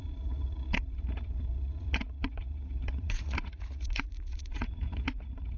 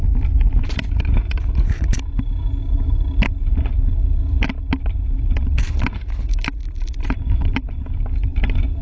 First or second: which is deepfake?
first